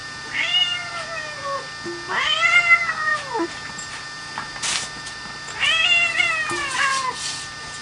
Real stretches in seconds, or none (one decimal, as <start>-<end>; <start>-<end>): 0.9-3.1